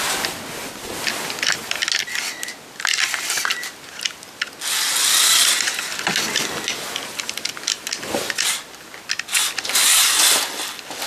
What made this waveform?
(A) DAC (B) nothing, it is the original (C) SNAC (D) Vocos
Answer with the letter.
B